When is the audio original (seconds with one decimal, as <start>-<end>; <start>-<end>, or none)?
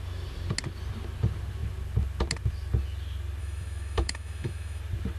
0.0-3.4; 4.8-5.2